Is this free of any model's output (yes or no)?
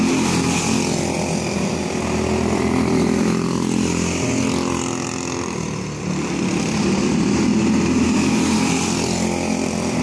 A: yes